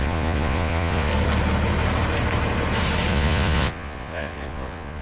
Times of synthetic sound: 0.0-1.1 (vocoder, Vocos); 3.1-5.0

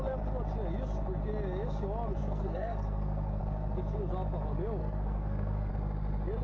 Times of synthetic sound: 2.2-3.4 (codec, SNAC); 4.8-5.7

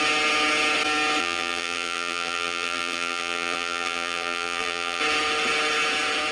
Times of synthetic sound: 1.2-5.0 (vocoder, BigVGAN v2)

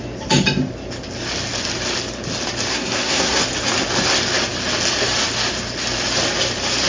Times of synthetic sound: 2.7-3.4 (codec, SNAC)